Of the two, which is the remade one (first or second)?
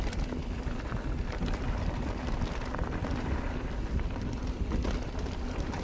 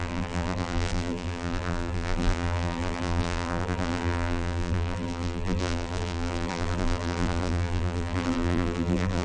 second